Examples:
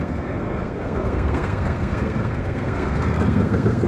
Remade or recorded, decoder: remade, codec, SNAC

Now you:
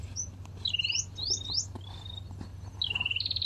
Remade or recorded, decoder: recorded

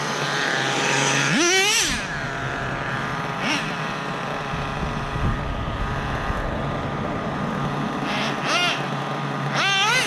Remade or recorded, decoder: recorded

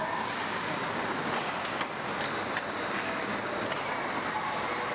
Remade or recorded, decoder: recorded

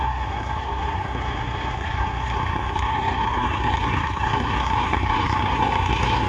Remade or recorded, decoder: remade, codec, SNAC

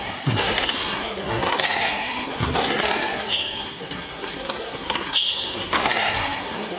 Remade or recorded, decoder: remade, codec, SNAC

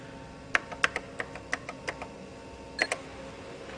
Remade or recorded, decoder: recorded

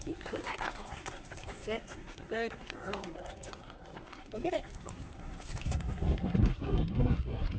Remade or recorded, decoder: remade, codec, SNAC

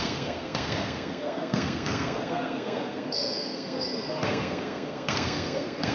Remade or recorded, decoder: remade, codec, SNAC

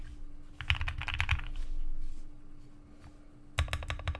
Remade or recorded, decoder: recorded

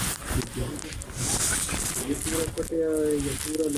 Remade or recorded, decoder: recorded